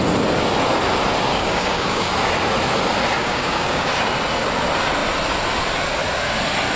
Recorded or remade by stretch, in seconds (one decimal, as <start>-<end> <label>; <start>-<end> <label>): 0.0-1.3 recorded; 1.3-2.1 remade; 2.1-3.2 recorded; 3.2-3.9 remade; 3.9-6.8 recorded